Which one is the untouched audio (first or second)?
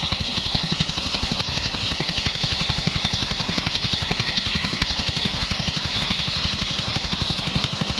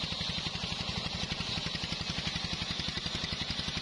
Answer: second